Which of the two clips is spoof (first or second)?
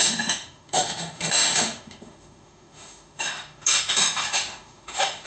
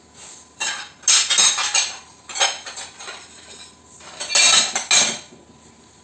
first